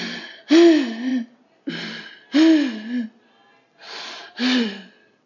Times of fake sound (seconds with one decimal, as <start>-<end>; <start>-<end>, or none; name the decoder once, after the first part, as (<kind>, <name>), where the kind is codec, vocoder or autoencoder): none